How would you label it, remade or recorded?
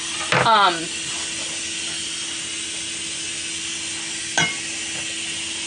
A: recorded